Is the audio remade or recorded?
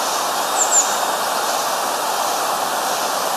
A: recorded